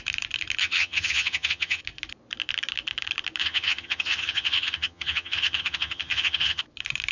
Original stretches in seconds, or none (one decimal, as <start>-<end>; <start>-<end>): 0.0-0.6; 1.8-3.4; 6.6-7.1